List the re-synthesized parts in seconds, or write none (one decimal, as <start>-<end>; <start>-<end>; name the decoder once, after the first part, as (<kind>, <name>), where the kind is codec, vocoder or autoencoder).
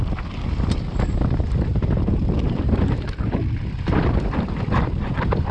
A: 1.7-5.0 (vocoder, BigVGAN v2)